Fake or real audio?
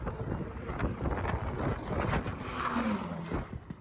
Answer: real